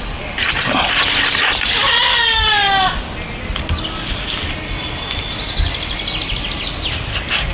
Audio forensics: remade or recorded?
recorded